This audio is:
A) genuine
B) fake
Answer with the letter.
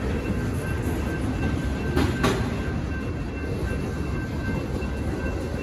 A